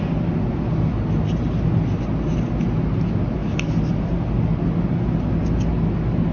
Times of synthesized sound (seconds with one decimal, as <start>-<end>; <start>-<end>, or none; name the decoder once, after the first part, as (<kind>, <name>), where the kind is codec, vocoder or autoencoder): none

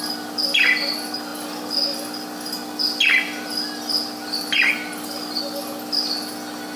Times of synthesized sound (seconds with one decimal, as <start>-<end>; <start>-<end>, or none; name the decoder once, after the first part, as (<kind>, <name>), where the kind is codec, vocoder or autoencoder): none

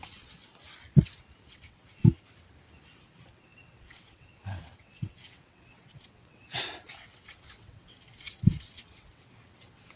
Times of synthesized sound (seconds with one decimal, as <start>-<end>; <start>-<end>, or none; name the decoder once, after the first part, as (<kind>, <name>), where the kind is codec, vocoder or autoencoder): 0.0-0.4 (vocoder, WaveNeXt); 1.4-2.0; 3.1-10.0